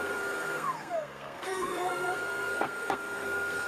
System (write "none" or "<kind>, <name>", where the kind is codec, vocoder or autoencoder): codec, SNAC